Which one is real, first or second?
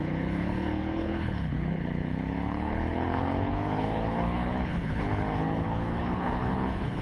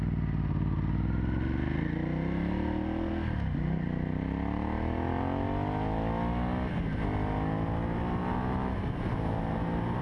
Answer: second